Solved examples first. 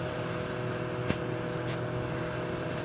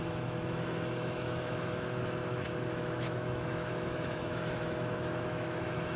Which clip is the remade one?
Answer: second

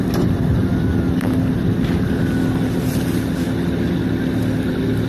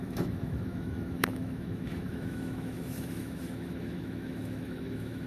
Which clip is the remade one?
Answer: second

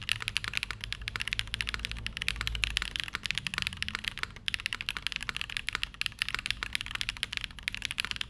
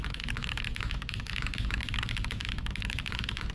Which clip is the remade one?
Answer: second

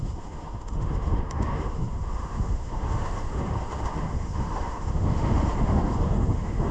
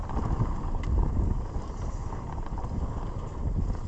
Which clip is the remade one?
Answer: first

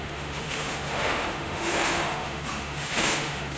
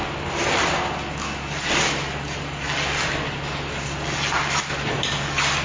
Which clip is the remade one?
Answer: first